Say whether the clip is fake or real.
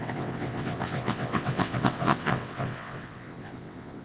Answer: fake